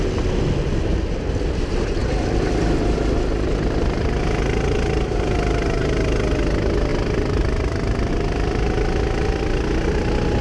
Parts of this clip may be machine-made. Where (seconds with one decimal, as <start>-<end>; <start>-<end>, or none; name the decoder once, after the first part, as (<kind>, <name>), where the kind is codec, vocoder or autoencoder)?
2.0-4.2 (vocoder, BigVGAN v2); 6.9-8.1